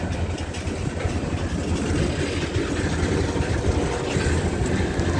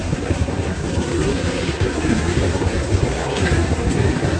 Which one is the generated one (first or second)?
second